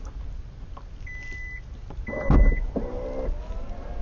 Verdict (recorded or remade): recorded